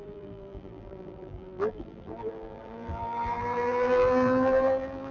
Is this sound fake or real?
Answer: fake